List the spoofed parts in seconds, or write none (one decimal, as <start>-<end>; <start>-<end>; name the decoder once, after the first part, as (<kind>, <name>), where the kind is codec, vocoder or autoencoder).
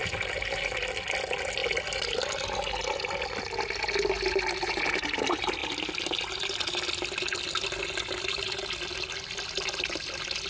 none